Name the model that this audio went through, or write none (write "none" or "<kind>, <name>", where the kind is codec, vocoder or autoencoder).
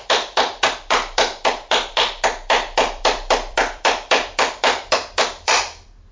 vocoder, BigVGAN v2